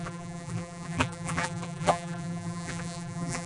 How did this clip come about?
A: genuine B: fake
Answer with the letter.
B